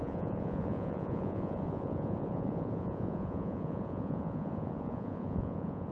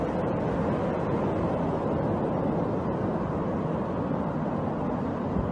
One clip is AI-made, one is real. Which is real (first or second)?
second